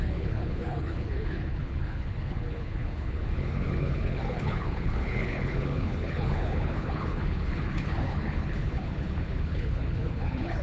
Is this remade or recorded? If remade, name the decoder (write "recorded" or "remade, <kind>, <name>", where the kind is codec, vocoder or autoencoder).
remade, codec, HILCodec